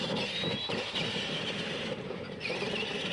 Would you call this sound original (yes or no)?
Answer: no